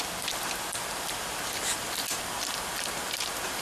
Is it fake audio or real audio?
real